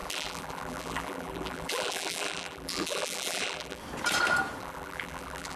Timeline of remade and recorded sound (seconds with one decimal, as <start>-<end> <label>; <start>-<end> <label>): 0.0-3.8 remade; 3.8-4.6 recorded; 4.6-5.6 remade